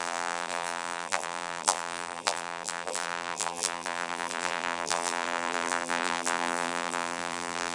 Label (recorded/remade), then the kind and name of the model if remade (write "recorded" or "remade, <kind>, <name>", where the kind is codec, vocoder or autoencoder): remade, vocoder, BigVGAN v2